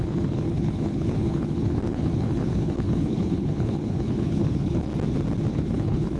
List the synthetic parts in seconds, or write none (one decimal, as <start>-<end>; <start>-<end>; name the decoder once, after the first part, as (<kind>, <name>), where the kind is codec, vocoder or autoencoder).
0.0-4.9 (codec, HILCodec); 5.5-6.2